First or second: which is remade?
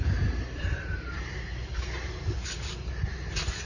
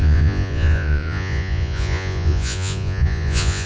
second